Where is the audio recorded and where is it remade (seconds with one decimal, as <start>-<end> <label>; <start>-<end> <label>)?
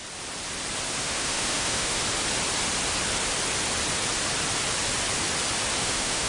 0.0-1.0 recorded; 1.0-2.0 remade; 2.0-5.8 recorded; 5.8-6.3 remade